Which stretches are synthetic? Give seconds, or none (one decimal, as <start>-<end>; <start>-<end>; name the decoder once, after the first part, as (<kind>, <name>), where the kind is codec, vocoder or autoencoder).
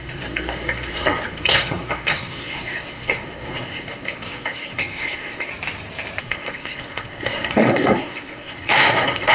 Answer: 0.0-5.5 (codec, SNAC); 6.2-9.3